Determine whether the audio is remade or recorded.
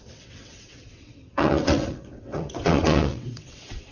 remade